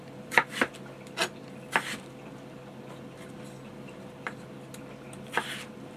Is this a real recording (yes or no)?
yes